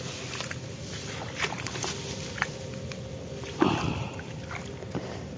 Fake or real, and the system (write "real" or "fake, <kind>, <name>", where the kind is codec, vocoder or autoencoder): real